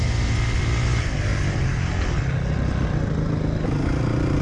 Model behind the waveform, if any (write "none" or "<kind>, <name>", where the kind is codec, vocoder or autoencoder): none